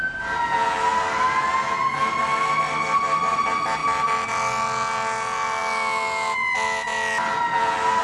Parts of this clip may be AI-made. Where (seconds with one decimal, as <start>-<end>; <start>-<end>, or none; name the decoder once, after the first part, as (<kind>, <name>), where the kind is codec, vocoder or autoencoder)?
none